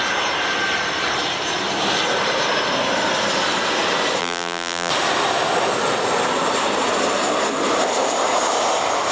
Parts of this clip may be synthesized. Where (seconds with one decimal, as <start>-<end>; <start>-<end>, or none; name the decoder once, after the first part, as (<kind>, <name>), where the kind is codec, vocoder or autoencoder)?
4.2-4.9 (vocoder, BigVGAN v2)